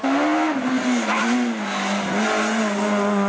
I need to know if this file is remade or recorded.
recorded